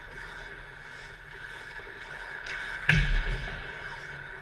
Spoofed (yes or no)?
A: yes